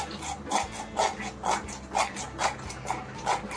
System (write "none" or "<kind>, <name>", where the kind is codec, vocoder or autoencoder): none